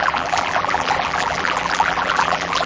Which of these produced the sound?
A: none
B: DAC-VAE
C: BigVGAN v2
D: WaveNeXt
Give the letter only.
C